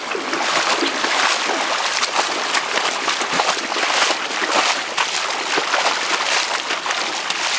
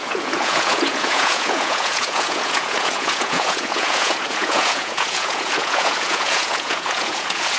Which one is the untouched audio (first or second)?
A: first